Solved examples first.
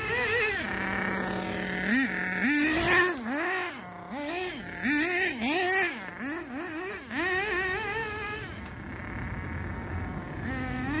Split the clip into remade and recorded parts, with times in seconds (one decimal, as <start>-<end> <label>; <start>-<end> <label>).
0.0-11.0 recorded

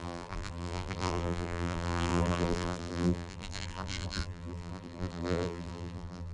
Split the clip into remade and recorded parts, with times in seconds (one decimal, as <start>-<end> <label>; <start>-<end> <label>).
0.0-6.3 remade

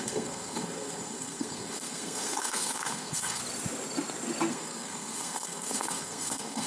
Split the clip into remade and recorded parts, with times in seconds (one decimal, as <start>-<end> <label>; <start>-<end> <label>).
0.0-3.4 remade; 3.4-4.5 recorded; 4.5-6.7 remade

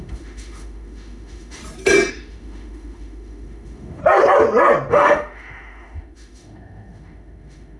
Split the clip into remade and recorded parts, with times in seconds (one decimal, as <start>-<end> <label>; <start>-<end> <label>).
0.0-1.6 remade; 1.6-2.1 recorded; 2.1-4.0 remade; 4.0-4.9 recorded; 4.9-7.8 remade